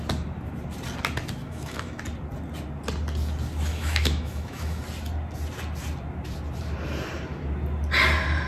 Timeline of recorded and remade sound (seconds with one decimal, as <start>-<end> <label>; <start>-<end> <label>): 0.0-1.4 recorded; 1.4-2.0 remade; 2.0-3.7 recorded; 3.7-4.8 remade; 4.8-8.5 recorded